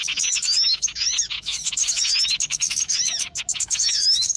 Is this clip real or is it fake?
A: fake